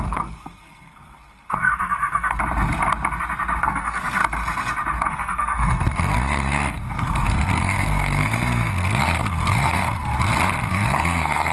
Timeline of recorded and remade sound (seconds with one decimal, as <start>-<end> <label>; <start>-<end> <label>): 0.0-2.4 remade; 2.4-3.6 recorded; 3.6-4.2 remade; 4.2-5.1 recorded; 5.1-10.1 remade; 10.1-10.7 recorded; 10.7-11.5 remade